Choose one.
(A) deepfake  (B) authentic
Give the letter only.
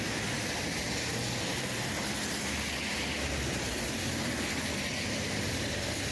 B